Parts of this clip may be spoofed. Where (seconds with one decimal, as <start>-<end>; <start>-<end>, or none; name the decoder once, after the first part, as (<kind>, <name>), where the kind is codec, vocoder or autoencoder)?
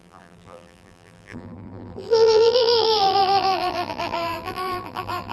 0.0-5.3 (vocoder, BigVGAN v2)